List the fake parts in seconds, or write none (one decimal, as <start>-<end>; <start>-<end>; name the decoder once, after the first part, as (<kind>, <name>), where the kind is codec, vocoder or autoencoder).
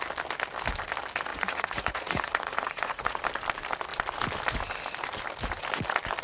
1.3-3.2 (vocoder, Vocos)